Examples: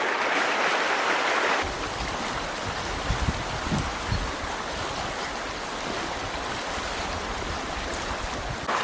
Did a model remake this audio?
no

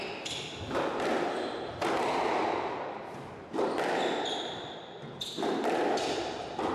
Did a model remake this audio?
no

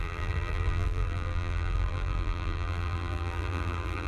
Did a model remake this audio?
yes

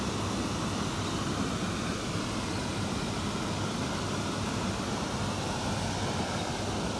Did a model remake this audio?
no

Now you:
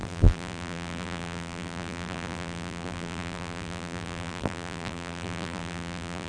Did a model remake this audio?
yes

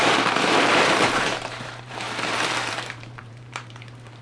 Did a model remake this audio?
yes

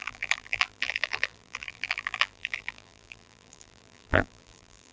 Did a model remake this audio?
yes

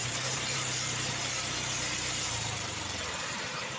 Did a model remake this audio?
yes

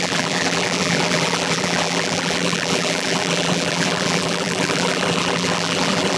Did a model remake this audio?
yes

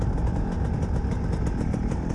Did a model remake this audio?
yes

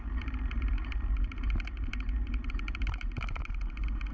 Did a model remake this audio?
yes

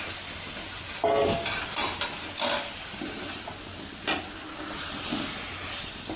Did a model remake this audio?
no